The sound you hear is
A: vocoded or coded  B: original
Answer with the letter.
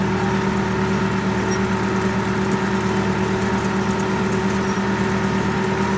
B